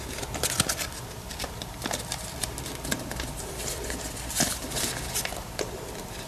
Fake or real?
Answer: fake